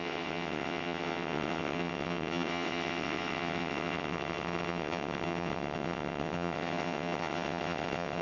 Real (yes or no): no